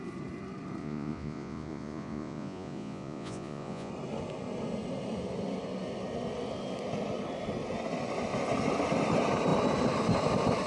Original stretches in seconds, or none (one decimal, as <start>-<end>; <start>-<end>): 0.0-0.8; 3.9-10.7